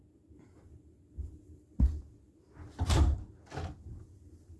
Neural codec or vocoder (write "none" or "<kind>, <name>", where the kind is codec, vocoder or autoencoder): none